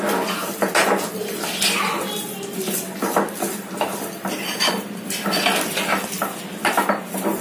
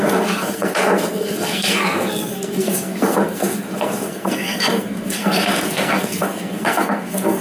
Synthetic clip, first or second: second